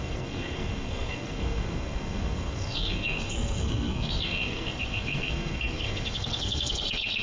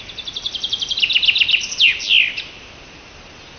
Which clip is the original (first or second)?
second